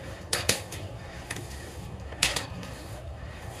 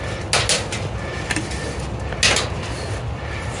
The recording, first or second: second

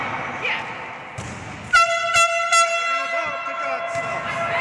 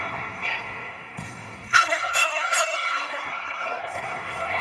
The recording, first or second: first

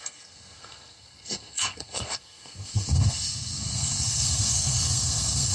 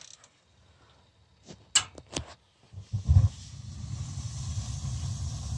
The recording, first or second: second